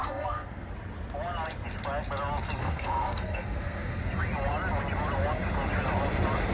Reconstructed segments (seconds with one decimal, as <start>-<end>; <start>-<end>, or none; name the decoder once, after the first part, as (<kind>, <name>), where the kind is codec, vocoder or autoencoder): 0.0-0.7 (codec, SNAC); 2.6-4.0